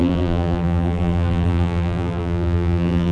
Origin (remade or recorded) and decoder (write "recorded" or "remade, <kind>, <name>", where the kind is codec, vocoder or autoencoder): remade, vocoder, BigVGAN v2